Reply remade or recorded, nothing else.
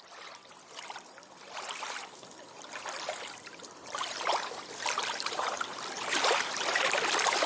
remade